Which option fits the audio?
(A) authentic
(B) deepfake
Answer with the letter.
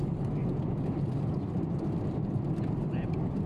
B